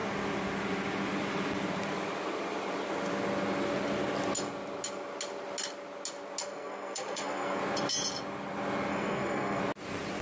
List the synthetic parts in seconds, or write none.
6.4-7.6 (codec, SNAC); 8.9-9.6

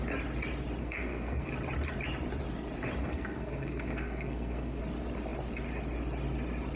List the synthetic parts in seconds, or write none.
0.8-1.5 (codec, SNAC); 3.0-4.8

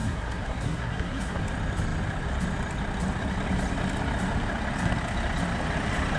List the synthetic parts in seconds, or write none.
0.0-1.4 (codec, SNAC)